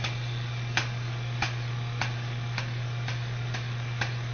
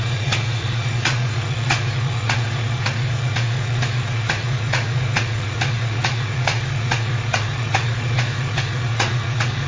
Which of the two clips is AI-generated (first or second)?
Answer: second